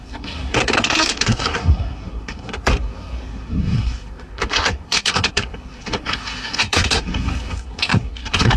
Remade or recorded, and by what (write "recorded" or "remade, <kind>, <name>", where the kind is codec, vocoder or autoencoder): remade, codec, SNAC